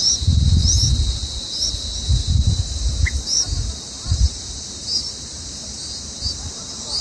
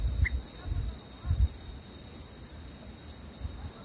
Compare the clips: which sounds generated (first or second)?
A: first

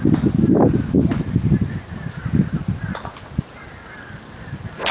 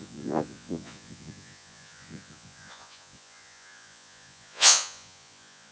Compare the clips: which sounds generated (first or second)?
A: second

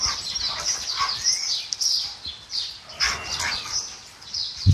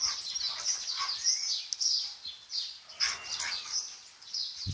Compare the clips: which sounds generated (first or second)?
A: first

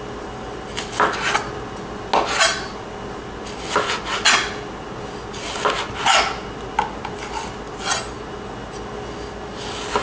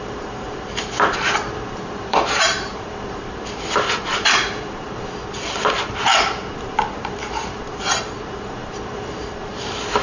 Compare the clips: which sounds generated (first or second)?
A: second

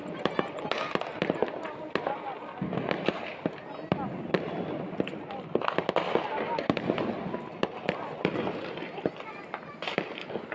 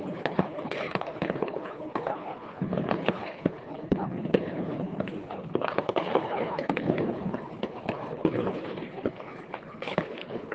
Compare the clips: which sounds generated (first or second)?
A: second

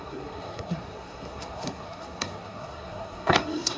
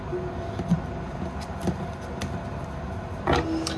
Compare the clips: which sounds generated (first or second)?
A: first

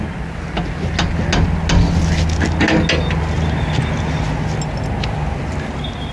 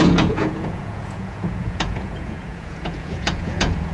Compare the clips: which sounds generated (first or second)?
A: second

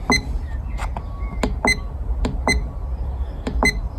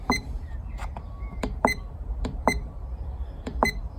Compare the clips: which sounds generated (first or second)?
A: second